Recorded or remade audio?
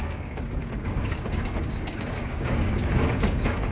remade